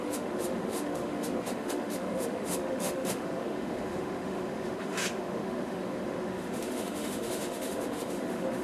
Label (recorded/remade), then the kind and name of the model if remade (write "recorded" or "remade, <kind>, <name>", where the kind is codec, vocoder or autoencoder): remade, autoencoder, DAC-VAE